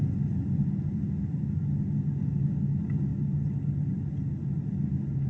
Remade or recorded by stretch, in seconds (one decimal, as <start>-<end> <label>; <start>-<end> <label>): 0.0-5.3 recorded